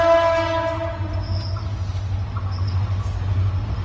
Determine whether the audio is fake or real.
real